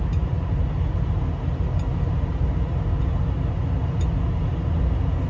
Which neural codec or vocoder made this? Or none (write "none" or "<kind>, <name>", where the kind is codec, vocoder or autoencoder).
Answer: none